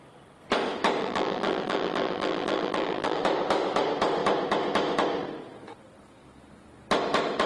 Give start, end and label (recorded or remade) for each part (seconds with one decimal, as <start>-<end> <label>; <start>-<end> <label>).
0.0-1.0 recorded; 1.0-3.2 remade; 3.2-7.5 recorded